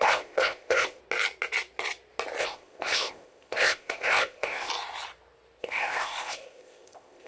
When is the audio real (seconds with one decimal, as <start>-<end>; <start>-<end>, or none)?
1.0-2.4; 4.7-5.6